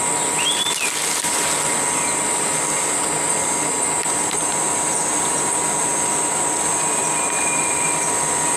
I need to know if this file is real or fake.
real